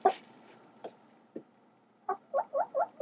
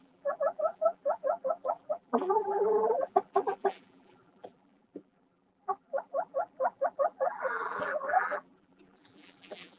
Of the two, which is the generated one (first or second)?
second